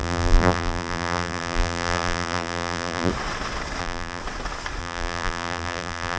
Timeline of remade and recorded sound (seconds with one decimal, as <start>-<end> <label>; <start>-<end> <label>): 0.0-3.1 remade; 3.1-3.8 recorded; 3.8-4.2 remade; 4.2-4.8 recorded; 4.8-6.2 remade